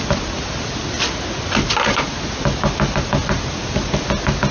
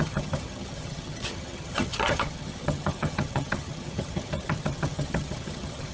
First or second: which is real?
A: first